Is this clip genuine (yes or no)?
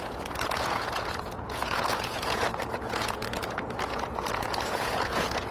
no